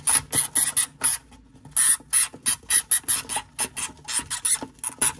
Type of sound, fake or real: real